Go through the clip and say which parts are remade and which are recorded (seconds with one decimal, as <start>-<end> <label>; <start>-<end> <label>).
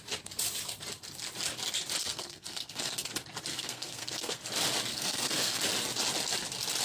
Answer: 0.0-2.0 recorded; 2.0-3.1 remade; 3.1-3.5 recorded; 3.5-4.4 remade; 4.4-4.9 recorded; 4.9-5.6 remade; 5.6-6.8 recorded